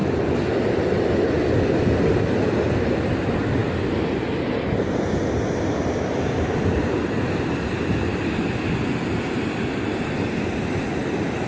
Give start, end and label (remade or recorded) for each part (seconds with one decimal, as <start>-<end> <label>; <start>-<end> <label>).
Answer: 0.0-11.5 recorded